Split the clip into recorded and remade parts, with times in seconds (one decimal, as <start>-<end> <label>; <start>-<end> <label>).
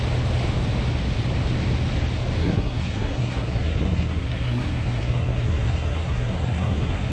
0.0-2.4 recorded; 2.4-7.1 remade